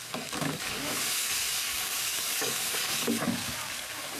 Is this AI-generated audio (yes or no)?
yes